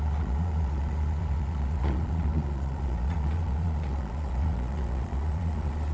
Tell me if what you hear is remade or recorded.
remade